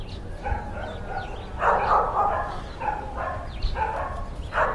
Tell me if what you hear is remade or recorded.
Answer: recorded